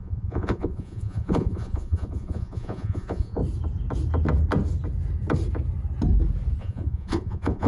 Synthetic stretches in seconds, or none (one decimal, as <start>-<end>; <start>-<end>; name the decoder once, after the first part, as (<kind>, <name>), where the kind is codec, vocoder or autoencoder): 0.0-3.4 (vocoder, Vocos); 6.6-7.7